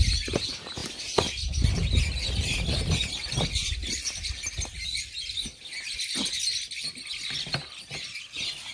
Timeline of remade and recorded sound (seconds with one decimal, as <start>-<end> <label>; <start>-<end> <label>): 0.0-8.7 recorded